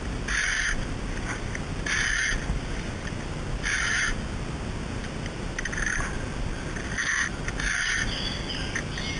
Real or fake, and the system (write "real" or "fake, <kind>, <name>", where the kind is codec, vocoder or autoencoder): real